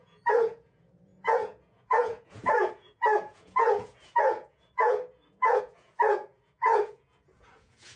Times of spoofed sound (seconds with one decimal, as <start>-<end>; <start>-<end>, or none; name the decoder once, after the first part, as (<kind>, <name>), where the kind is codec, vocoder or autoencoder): 0.0-8.0 (vocoder, Vocos)